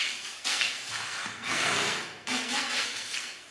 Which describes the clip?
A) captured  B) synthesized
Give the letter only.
B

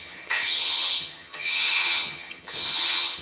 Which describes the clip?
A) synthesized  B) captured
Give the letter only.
A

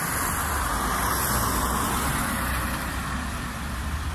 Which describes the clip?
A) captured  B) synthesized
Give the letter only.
A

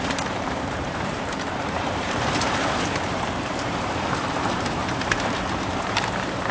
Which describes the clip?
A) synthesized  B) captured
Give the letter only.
A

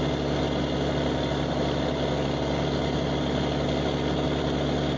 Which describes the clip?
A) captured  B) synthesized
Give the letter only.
A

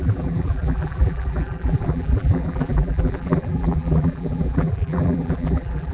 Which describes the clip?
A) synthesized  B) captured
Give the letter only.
A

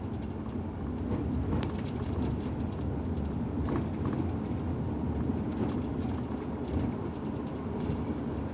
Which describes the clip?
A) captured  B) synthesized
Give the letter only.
B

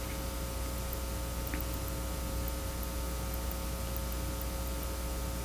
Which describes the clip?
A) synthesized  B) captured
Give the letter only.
B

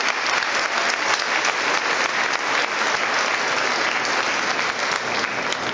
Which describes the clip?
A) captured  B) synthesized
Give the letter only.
A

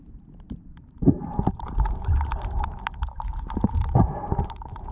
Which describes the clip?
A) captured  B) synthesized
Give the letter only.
B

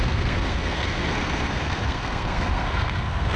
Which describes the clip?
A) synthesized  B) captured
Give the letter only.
A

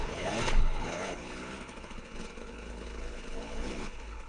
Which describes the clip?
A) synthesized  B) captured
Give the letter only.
A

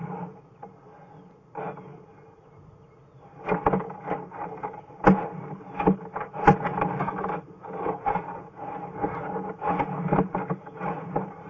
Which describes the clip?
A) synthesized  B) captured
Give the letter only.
B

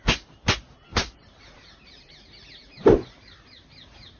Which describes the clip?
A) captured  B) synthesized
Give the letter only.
A